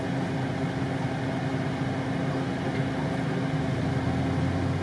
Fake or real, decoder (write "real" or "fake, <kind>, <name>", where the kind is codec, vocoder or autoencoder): real